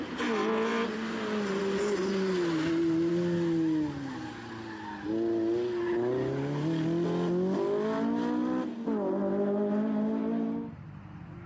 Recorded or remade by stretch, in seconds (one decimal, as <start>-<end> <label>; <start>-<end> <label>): 0.0-11.5 recorded